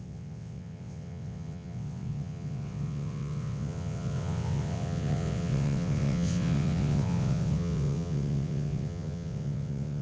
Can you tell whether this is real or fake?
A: fake